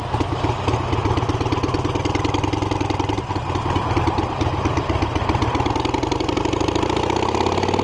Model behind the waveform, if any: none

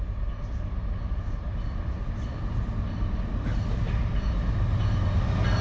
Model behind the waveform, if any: none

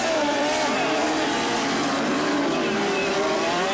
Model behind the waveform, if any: vocoder, BigVGAN v2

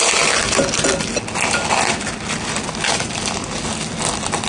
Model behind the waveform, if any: none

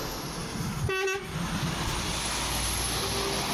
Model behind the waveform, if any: none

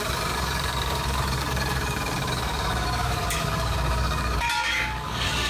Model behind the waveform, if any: codec, DAC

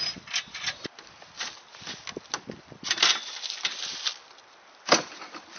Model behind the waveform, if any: none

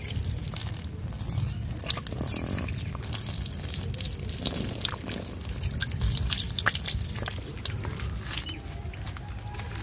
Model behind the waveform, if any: none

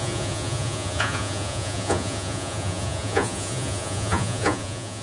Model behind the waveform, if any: vocoder, Vocos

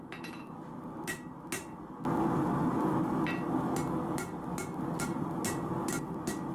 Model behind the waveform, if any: none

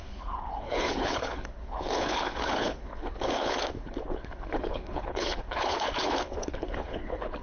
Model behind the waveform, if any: codec, HILCodec